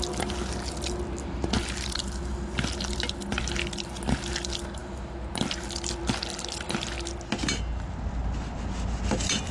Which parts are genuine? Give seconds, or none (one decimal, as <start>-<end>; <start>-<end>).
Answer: 0.0-9.5